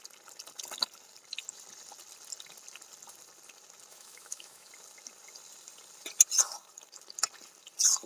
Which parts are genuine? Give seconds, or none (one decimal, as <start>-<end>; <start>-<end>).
0.0-3.9; 4.7-8.1

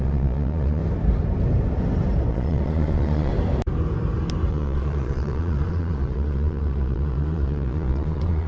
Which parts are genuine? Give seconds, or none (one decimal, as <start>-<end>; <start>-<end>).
0.8-2.3; 3.3-4.5

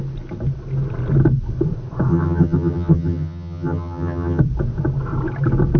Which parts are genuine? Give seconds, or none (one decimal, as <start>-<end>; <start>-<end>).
0.0-2.1; 4.4-5.8

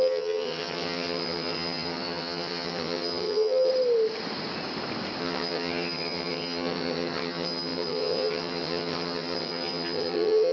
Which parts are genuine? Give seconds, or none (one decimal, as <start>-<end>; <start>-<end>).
3.7-5.2

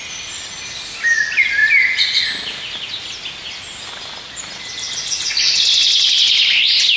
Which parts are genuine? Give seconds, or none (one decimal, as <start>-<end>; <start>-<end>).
0.0-7.0

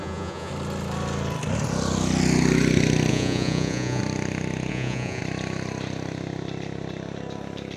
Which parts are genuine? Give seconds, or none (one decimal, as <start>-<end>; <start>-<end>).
0.5-3.1; 4.0-4.7; 5.2-7.8

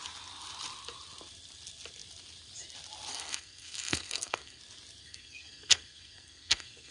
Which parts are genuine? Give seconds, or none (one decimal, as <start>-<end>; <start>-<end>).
0.0-3.1; 4.6-5.0

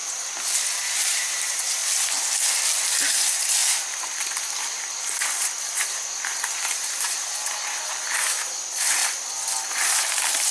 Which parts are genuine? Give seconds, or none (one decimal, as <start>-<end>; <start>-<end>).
0.0-0.8; 1.8-3.1; 3.6-5.6; 9.0-10.0